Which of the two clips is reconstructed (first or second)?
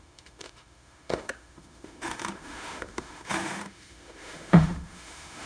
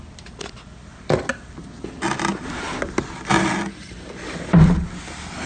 first